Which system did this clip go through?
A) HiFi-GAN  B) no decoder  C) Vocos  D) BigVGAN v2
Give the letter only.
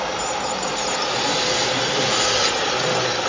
B